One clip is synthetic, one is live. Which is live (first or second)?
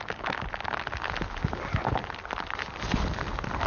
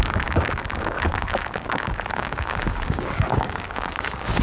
first